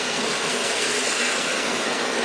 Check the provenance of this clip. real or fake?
fake